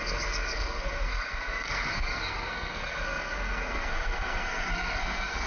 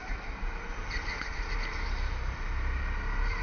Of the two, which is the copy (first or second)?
first